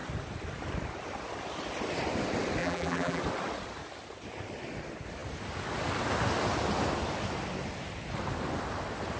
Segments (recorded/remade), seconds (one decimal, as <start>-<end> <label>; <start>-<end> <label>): 0.0-2.6 recorded; 2.6-3.2 remade; 3.2-9.2 recorded